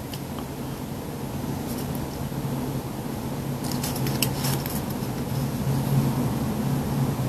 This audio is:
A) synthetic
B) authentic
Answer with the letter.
B